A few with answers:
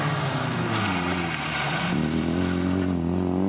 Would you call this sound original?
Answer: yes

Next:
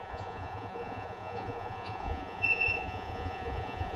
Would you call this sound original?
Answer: no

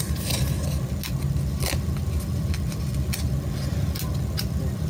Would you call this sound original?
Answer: yes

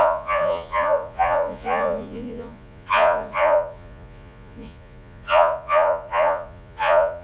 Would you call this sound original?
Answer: no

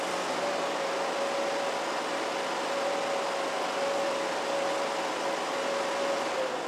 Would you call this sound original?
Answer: yes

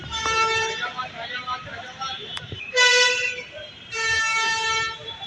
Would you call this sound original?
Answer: no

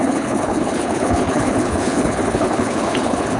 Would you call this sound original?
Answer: no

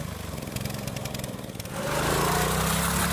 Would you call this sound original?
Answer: yes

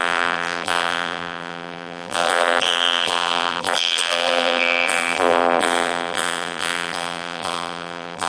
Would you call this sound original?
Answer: no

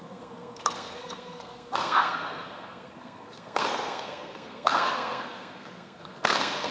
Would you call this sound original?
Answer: no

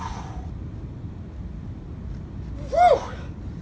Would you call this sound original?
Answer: yes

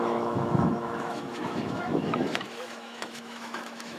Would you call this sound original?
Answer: no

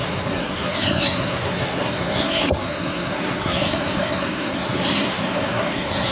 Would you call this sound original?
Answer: no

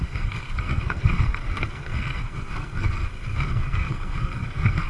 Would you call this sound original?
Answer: no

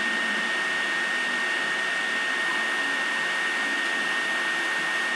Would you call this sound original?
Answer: yes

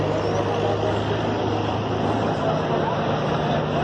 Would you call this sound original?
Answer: yes